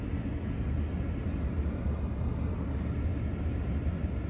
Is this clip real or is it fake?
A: real